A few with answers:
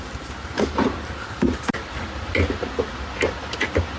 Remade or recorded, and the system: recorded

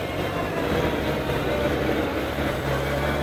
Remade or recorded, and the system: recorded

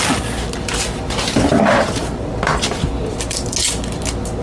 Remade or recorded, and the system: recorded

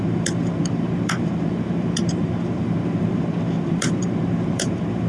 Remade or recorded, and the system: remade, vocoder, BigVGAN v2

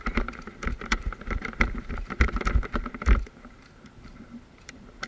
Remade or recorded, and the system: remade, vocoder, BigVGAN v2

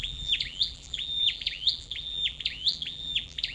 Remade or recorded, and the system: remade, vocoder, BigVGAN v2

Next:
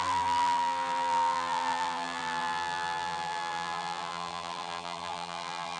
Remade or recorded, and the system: remade, vocoder, BigVGAN v2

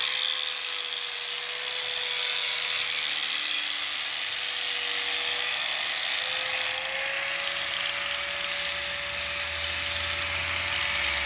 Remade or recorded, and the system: recorded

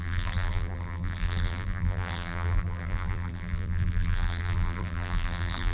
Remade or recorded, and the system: remade, vocoder, BigVGAN v2